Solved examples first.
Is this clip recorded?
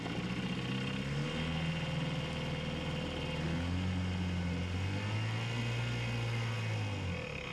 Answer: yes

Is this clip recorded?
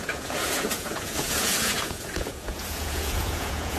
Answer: no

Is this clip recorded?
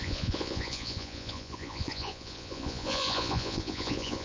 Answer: no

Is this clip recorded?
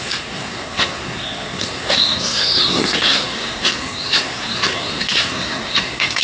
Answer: no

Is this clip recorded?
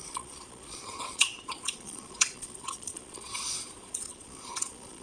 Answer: no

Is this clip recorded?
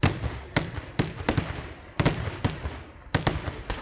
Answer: yes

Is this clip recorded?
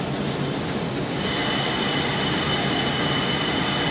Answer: yes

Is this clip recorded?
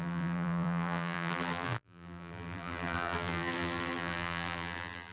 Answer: no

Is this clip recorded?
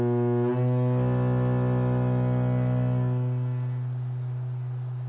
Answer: yes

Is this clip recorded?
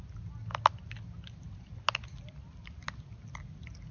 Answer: yes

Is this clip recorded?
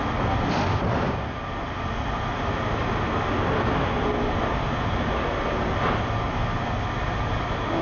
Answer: yes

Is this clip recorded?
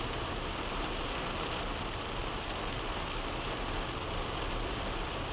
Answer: yes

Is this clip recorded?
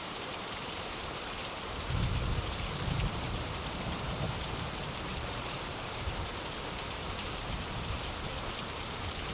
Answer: no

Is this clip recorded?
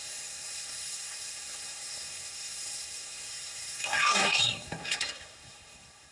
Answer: no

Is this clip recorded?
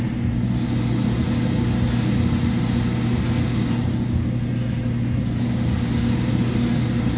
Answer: yes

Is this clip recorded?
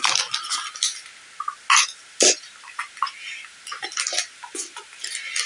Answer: yes